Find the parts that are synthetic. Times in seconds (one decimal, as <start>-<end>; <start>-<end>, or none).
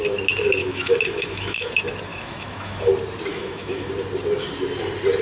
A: 0.6-1.7; 2.1-2.9; 3.3-3.9